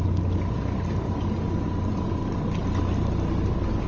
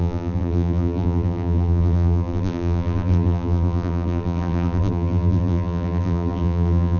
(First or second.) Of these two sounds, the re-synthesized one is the second